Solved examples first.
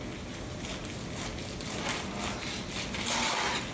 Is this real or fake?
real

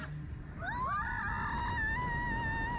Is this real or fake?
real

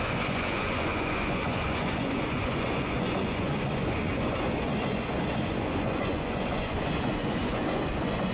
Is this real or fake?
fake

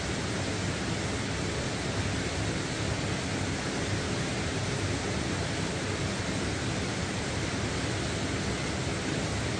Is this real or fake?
real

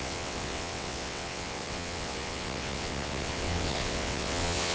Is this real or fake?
fake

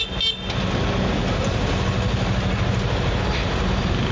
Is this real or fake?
real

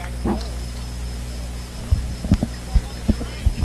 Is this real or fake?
real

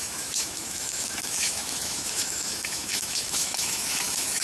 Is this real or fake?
fake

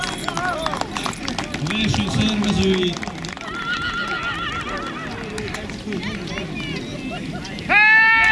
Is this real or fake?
real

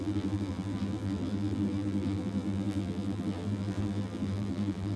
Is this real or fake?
fake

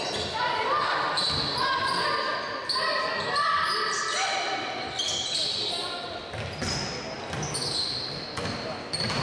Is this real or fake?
real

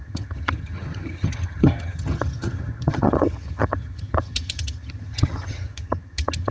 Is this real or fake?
fake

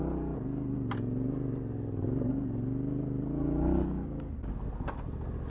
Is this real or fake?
real